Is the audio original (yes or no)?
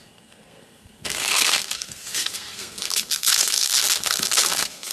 no